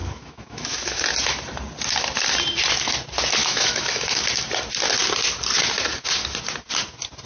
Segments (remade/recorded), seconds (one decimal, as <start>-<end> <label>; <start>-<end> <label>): 0.0-1.0 remade; 1.0-3.4 recorded; 3.4-4.2 remade; 4.2-7.3 recorded